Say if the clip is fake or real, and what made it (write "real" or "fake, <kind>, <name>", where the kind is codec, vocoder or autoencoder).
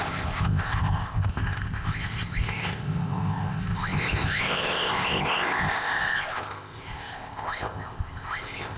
fake, codec, ZipCodec